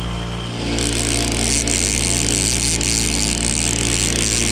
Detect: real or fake real